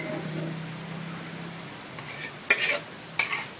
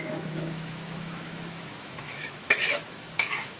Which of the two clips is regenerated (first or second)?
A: second